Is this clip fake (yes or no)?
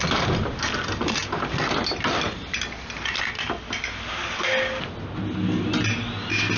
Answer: no